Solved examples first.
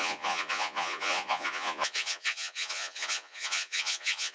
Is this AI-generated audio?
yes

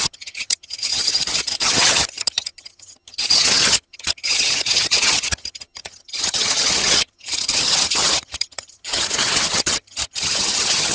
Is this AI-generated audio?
yes